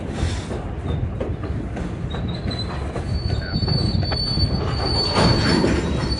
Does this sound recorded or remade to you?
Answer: recorded